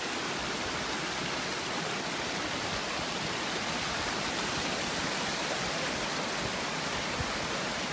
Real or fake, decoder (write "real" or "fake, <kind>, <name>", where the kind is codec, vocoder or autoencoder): real